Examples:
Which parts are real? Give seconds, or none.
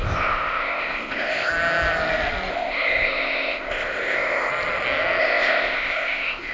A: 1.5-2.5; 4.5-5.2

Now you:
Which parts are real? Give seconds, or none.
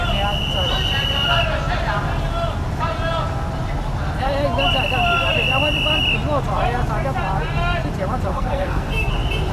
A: 0.0-8.3; 9.1-9.5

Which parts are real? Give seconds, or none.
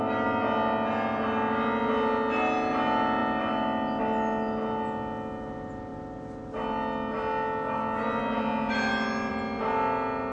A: 0.0-10.3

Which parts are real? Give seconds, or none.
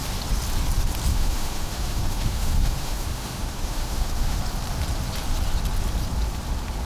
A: 0.0-1.1; 4.4-6.8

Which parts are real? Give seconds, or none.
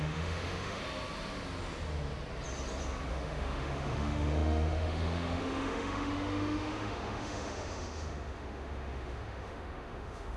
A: 0.8-3.1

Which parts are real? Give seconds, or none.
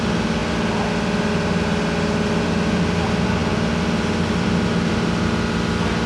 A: 0.0-6.1